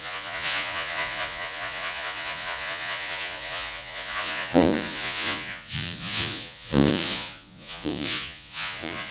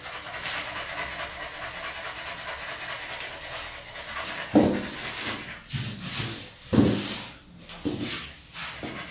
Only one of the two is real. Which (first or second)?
second